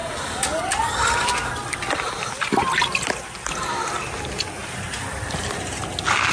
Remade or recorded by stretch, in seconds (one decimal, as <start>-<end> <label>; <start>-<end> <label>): 0.0-3.1 remade; 3.1-4.6 recorded; 4.6-5.7 remade; 5.7-6.3 recorded